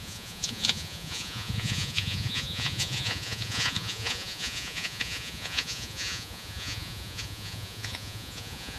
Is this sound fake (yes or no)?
yes